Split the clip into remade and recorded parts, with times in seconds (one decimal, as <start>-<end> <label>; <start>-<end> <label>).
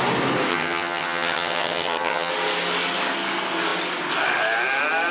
0.0-0.5 recorded; 0.5-2.3 remade; 2.3-5.1 recorded